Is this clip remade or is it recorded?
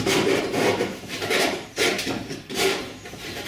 remade